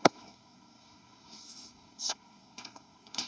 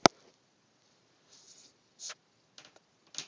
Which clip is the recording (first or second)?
second